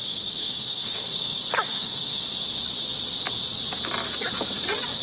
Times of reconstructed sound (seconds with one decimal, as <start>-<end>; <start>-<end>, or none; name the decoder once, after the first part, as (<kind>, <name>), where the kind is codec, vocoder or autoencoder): 0.0-2.2 (codec, DAC)